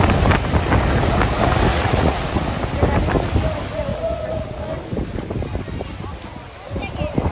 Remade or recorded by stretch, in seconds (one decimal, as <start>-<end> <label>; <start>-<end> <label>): 0.0-1.7 recorded; 1.7-2.5 remade; 2.5-3.9 recorded; 3.9-4.6 remade; 4.6-7.3 recorded